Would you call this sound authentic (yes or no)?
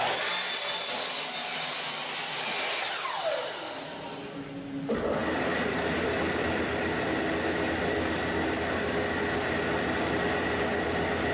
yes